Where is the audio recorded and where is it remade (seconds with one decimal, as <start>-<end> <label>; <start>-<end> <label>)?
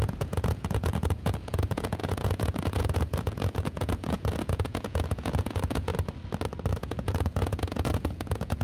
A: 0.0-5.9 remade; 5.9-6.7 recorded; 6.7-8.6 remade